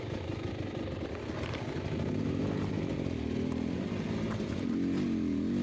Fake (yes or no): no